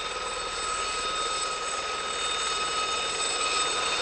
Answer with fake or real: real